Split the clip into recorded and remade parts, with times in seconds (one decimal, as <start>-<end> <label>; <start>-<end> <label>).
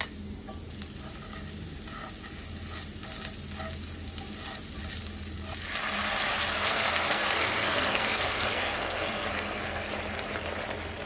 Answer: 0.0-6.3 recorded; 6.3-9.9 remade; 9.9-11.1 recorded